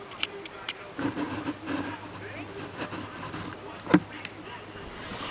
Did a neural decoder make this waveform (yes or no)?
no